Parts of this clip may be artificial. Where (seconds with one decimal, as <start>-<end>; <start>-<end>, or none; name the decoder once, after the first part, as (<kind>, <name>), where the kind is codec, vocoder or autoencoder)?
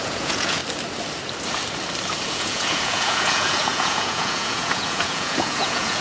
0.0-0.6 (vocoder, Vocos); 2.2-6.0